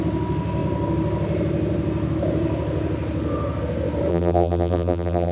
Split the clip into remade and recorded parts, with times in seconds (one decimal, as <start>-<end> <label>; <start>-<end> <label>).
0.0-4.1 recorded; 4.1-5.3 remade